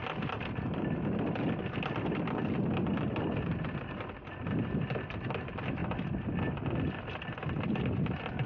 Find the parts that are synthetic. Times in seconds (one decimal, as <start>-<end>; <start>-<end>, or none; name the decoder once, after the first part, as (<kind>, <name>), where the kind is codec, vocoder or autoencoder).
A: 0.0-5.8 (vocoder, BigVGAN v2); 6.8-8.5